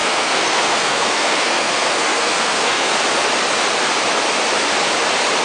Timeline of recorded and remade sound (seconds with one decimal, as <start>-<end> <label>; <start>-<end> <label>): 0.0-2.9 remade; 2.9-5.4 recorded